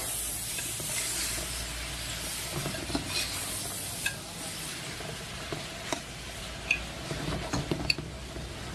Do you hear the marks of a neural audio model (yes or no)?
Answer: no